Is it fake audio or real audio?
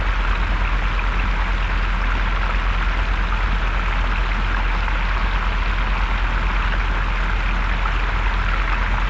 real